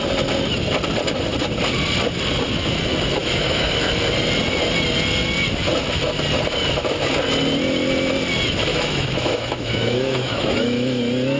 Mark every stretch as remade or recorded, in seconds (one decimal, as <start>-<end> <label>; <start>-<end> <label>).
0.0-3.2 recorded; 3.2-3.7 remade; 3.7-8.7 recorded; 8.7-11.0 remade; 11.0-11.4 recorded